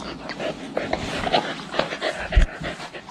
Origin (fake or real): real